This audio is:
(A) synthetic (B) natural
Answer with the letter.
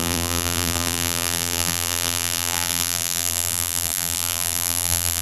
A